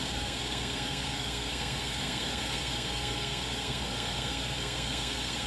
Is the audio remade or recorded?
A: remade